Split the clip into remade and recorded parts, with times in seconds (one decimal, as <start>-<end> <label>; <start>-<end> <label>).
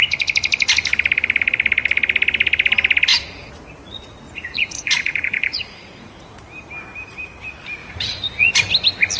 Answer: 0.0-3.1 recorded; 3.1-6.4 remade; 6.4-7.8 recorded; 7.8-8.5 remade; 8.5-9.2 recorded